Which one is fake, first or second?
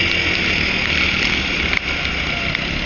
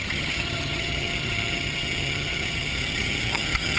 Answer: second